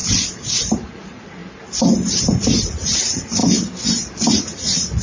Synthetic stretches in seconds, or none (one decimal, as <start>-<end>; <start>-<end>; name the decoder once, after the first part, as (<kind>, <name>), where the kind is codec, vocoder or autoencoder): 0.9-1.4 (vocoder, Vocos); 2.6-3.4; 4.3-5.0